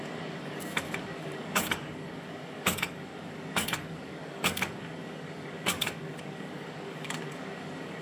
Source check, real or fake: fake